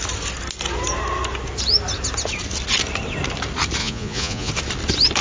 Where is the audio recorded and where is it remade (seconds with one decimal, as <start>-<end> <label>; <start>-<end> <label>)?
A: 0.0-3.8 recorded; 3.8-4.5 remade; 4.5-5.2 recorded